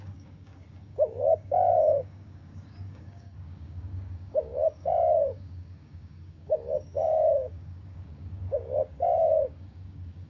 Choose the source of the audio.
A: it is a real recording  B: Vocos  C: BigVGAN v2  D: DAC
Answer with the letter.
D